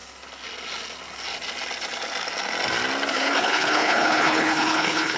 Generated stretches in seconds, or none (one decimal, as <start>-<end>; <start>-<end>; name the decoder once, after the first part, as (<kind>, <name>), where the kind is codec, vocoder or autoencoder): 3.1-5.2 (codec, HILCodec)

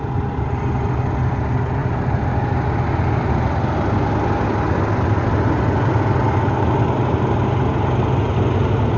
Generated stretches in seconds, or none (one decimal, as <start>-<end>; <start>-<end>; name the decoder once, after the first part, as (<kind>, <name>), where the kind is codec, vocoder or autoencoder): none

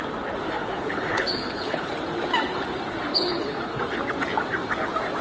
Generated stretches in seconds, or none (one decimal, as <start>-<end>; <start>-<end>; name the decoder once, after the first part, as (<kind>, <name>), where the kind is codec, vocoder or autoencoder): 0.6-1.9 (codec, HILCodec); 3.1-3.8

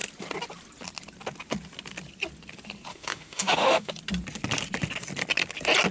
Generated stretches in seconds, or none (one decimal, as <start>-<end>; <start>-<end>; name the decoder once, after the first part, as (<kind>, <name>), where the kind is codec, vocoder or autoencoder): 2.9-3.9 (autoencoder, DAC-VAE)

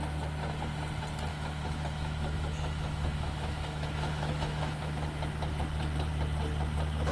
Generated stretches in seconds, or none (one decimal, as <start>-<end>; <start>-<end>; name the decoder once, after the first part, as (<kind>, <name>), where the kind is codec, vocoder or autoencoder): 1.3-5.6 (autoencoder, DAC-VAE)